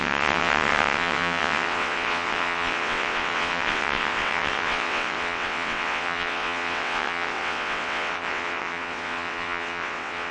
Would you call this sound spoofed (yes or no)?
yes